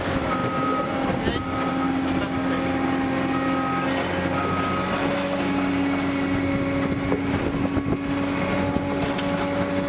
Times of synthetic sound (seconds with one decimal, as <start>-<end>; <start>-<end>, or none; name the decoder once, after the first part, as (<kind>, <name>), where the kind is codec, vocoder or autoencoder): none